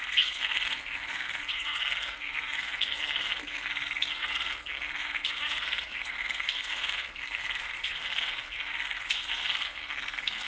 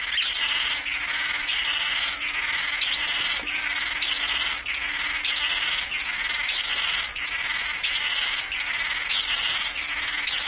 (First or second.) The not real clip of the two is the first